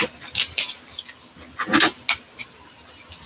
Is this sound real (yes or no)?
yes